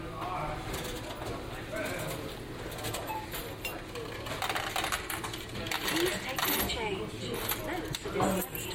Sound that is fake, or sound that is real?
real